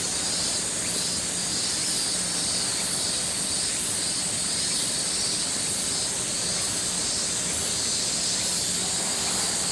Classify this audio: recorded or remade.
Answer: recorded